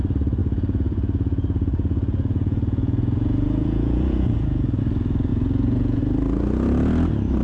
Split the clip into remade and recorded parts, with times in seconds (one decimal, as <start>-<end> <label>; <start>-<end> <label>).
0.0-0.4 recorded; 0.4-4.8 remade; 4.8-5.3 recorded; 5.3-6.0 remade; 6.0-7.4 recorded